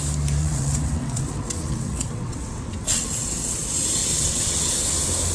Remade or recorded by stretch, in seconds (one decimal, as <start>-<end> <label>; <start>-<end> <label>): 0.0-0.4 recorded; 0.4-3.6 remade; 3.6-4.0 recorded; 4.0-4.7 remade; 4.7-5.3 recorded